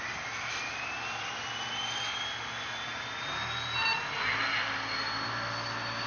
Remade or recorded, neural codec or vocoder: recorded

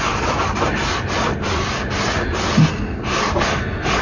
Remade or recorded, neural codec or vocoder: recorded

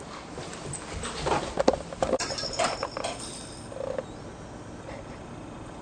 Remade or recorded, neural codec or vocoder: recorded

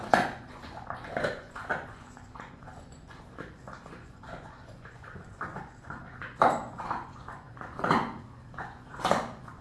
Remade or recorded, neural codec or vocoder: remade, vocoder, Vocos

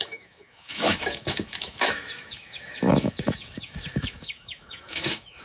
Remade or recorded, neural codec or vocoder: remade, autoencoder, DAC-VAE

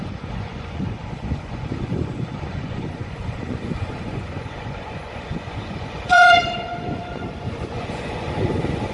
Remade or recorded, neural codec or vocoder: remade, vocoder, Vocos